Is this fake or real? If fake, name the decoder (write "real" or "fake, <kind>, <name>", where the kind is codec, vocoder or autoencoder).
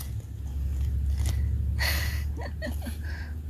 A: real